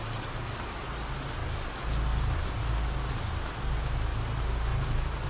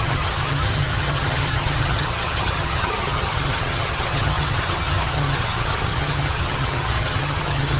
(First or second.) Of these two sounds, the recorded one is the first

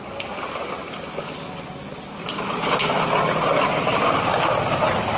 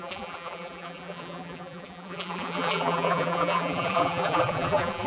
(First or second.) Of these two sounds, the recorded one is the first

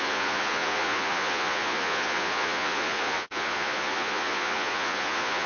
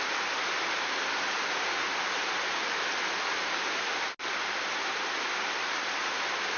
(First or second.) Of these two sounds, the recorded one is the second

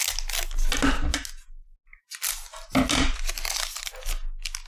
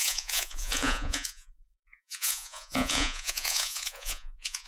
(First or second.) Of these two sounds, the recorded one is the first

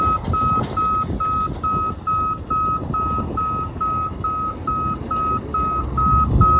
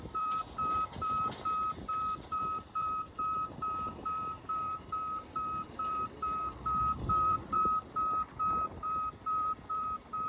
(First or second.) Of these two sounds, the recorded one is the first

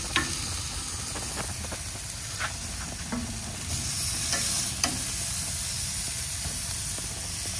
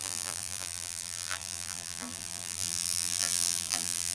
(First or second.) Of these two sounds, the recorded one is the first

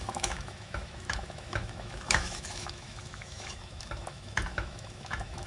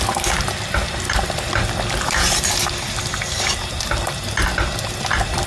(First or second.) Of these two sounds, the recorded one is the second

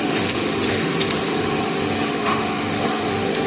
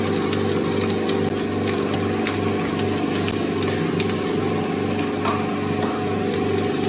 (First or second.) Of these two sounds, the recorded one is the second